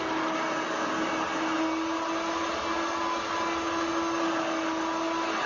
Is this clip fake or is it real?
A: real